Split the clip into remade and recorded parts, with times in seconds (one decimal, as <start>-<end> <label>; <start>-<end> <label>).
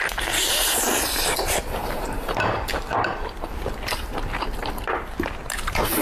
0.0-6.0 remade